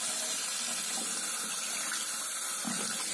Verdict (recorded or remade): recorded